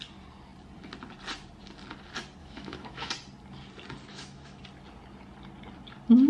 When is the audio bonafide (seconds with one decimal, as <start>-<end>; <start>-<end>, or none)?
0.0-2.4; 3.1-4.1; 4.6-6.3